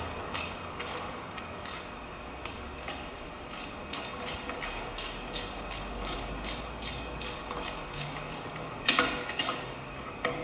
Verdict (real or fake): fake